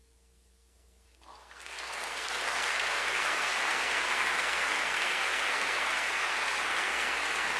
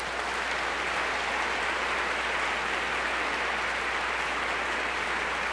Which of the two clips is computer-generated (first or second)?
first